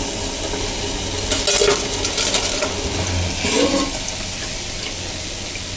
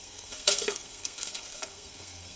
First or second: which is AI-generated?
second